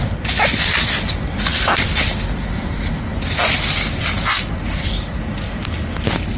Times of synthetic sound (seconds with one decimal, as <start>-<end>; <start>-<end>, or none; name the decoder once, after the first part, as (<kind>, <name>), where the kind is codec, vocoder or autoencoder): none